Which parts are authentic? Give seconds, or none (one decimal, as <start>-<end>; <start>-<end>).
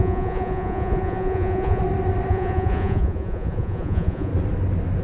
1.8-2.3; 4.3-5.0